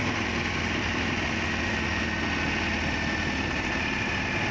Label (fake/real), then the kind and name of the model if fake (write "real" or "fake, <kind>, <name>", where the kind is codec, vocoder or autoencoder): real